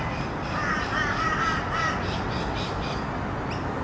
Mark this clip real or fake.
real